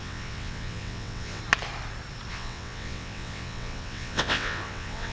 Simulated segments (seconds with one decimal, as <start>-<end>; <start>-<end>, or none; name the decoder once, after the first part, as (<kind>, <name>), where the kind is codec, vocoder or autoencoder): 0.0-1.4 (vocoder, WaveNeXt); 2.3-5.1